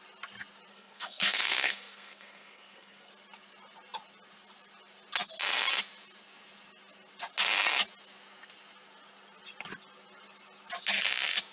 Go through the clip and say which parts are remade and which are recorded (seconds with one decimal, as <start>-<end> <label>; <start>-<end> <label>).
0.0-0.7 recorded; 0.7-3.1 remade; 3.1-11.5 recorded